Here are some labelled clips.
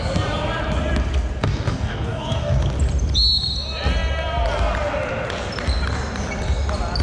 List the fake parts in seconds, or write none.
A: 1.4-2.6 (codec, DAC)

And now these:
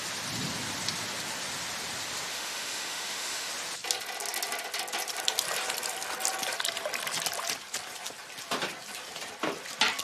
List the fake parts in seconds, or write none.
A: 2.3-3.5 (autoencoder, DAC-VAE)

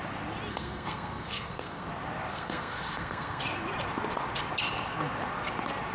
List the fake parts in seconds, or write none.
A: 0.5-1.9 (codec, SNAC); 2.3-3.4

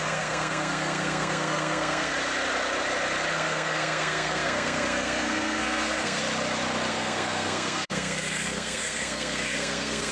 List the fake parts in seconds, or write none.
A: 0.0-2.1 (codec, SNAC); 3.3-6.2; 6.9-10.1

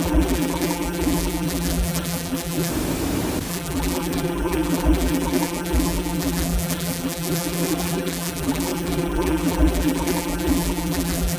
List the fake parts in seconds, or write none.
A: 0.0-2.7 (vocoder, BigVGAN v2); 3.5-11.4